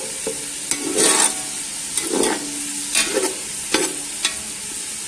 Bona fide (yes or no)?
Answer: yes